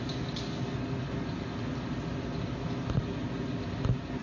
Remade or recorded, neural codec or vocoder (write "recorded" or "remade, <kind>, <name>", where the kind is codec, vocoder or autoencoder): recorded